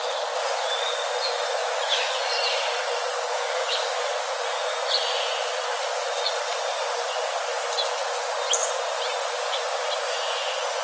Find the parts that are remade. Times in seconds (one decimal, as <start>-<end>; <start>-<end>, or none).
1.6-2.2; 3.1-4.1